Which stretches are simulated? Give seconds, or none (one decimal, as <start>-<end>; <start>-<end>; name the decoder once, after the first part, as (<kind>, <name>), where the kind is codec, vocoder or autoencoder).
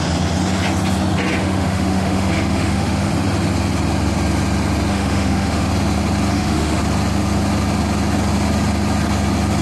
1.4-3.1 (autoencoder, DAC-VAE); 4.9-5.7; 6.3-6.8